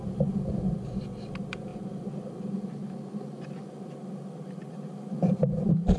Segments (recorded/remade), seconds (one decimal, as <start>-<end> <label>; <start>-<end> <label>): 0.0-4.6 recorded; 4.6-6.0 remade